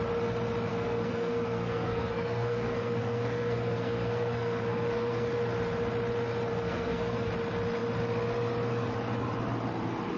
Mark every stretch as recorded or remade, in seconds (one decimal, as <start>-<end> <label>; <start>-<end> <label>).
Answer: 0.0-0.7 recorded; 0.7-5.3 remade; 5.3-6.5 recorded; 6.5-7.3 remade; 7.3-10.2 recorded